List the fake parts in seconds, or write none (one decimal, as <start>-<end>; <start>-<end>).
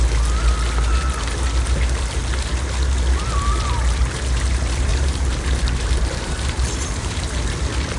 4.9-7.3